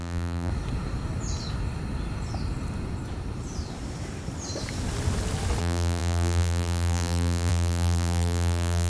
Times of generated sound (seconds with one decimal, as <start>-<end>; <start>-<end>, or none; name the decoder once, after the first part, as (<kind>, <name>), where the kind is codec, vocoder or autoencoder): 0.0-0.5 (vocoder, BigVGAN v2); 5.6-8.9